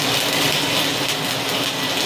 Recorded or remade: recorded